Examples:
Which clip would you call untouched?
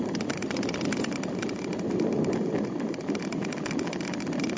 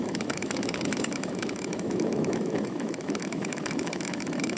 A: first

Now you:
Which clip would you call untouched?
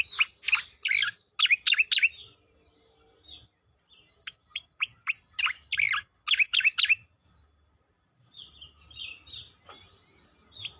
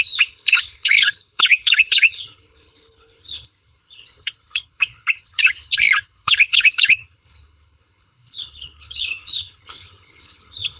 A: first